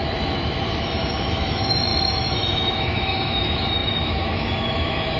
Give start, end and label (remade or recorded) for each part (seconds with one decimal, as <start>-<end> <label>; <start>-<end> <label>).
0.0-5.2 remade